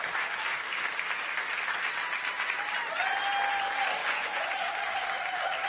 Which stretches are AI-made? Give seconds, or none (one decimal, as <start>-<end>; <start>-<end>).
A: 4.0-4.7